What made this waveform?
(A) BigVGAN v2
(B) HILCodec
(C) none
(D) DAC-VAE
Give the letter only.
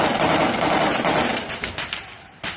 C